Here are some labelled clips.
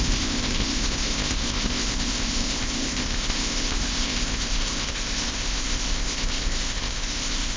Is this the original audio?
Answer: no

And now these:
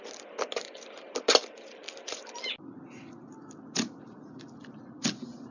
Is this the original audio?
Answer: yes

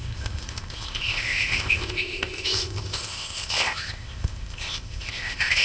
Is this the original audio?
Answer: no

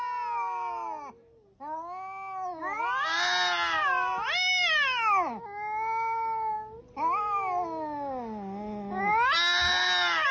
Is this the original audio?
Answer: yes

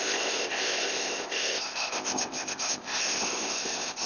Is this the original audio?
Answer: no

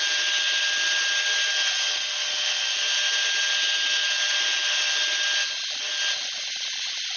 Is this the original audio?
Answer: yes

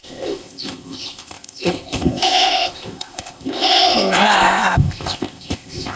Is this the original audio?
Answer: no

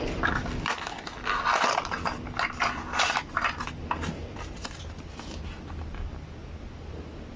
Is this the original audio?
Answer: yes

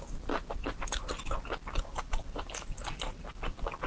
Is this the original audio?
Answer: yes